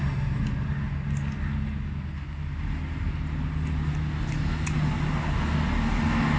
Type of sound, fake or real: real